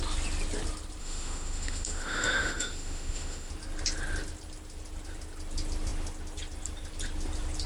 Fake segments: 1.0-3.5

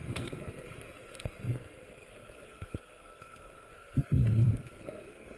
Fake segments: 0.0-5.4